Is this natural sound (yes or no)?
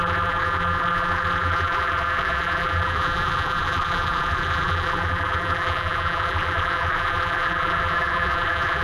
no